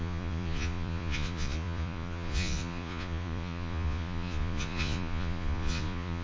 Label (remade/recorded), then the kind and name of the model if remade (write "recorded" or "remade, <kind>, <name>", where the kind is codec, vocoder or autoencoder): remade, vocoder, Vocos